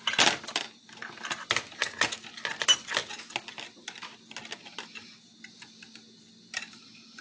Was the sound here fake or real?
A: real